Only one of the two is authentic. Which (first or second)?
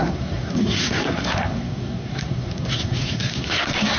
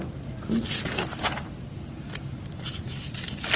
second